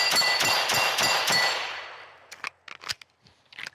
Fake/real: real